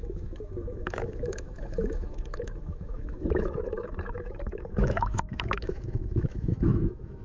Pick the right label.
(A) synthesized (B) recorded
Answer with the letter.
A